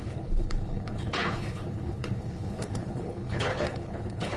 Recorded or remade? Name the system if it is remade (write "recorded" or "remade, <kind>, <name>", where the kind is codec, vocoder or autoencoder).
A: remade, codec, HILCodec